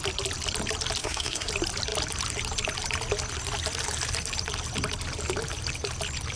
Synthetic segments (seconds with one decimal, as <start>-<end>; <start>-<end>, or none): 1.0-1.5